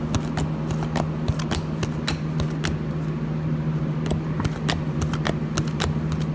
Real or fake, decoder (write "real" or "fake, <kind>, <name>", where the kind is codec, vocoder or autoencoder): real